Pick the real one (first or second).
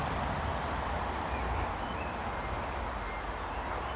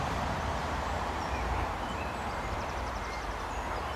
first